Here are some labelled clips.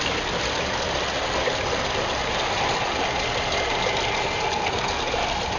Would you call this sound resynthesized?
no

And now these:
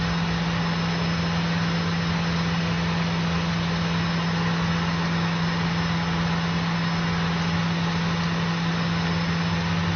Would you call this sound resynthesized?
no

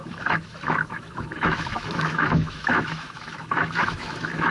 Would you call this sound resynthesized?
yes